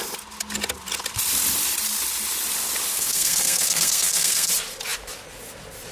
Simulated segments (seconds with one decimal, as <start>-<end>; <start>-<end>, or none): 2.9-4.5